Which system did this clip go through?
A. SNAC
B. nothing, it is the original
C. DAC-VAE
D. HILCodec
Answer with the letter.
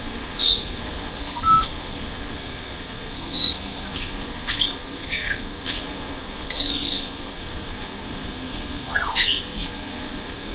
A